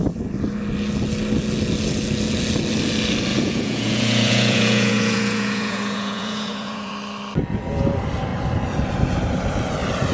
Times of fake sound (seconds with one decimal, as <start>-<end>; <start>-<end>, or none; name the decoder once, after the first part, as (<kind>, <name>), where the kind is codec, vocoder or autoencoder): 3.3-6.9 (vocoder, Vocos)